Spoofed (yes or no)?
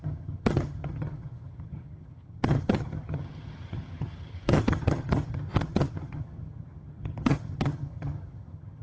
yes